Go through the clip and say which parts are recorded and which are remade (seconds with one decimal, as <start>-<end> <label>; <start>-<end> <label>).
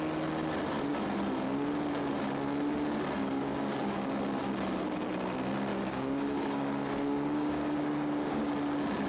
0.0-3.2 recorded; 3.2-4.1 remade; 4.1-5.7 recorded; 5.7-8.5 remade; 8.5-9.1 recorded